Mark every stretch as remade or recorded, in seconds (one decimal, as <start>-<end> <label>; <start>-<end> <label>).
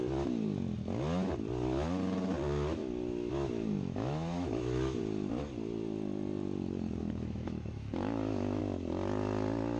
0.0-2.8 recorded; 2.8-5.0 remade; 5.0-7.0 recorded; 7.0-8.6 remade; 8.6-9.8 recorded